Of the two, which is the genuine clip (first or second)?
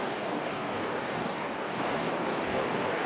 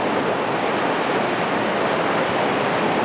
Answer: second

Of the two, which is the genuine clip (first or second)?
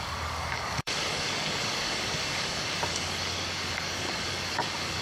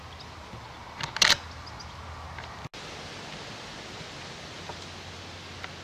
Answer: second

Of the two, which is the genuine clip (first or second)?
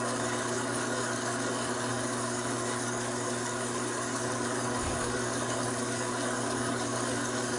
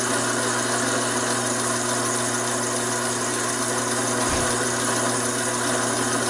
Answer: second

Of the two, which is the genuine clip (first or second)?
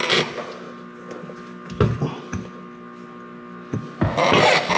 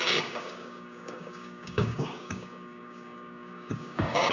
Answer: first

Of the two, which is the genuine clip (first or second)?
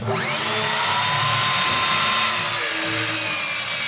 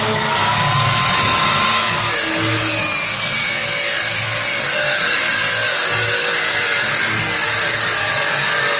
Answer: first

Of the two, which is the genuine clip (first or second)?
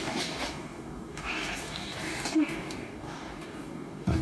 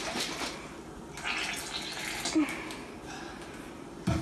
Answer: second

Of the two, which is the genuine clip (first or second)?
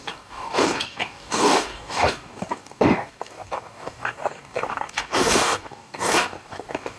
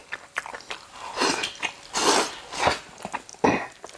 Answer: second